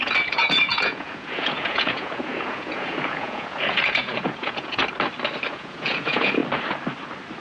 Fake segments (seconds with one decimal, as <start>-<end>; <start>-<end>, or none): 0.0-4.8; 5.5-6.4